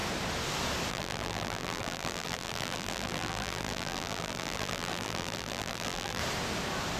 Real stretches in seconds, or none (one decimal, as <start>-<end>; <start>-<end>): 0.0-0.9; 6.2-7.0